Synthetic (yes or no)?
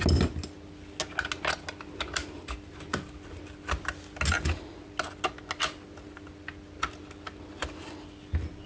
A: no